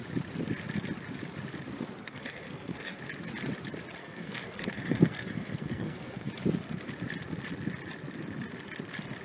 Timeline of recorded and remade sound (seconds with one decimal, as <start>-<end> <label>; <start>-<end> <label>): 0.0-2.0 recorded; 2.0-3.0 remade; 3.0-4.0 recorded; 4.0-6.3 remade; 6.3-9.2 recorded